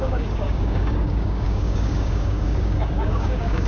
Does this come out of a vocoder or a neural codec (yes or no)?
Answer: yes